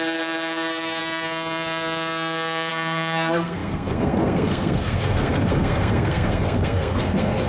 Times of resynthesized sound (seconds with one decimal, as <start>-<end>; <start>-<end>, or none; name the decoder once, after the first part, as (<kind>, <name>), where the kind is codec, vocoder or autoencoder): 0.0-1.0 (codec, SNAC); 2.7-7.5